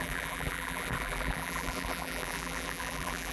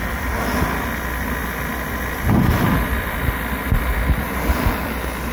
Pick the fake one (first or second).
first